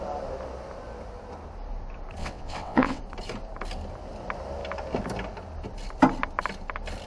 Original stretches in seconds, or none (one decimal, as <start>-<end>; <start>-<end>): 0.0-2.2; 3.0-7.1